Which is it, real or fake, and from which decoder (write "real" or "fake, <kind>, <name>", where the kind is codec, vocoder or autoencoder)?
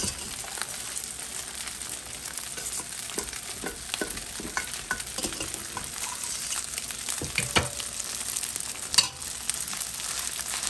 real